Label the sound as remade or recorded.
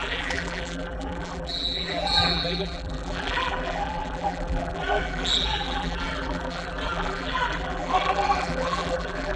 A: remade